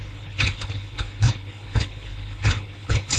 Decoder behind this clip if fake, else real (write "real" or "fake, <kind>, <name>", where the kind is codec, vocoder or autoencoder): fake, codec, HILCodec